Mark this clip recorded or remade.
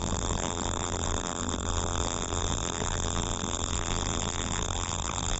remade